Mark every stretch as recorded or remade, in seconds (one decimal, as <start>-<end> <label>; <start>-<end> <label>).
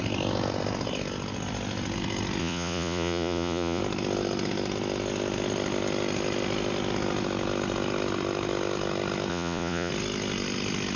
0.0-2.4 recorded; 2.4-3.8 remade; 3.8-9.3 recorded; 9.3-9.9 remade; 9.9-11.0 recorded